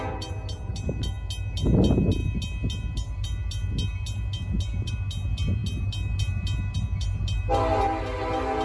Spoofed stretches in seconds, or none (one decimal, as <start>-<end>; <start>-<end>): none